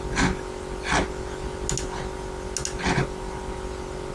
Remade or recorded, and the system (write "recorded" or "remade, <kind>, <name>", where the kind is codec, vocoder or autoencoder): recorded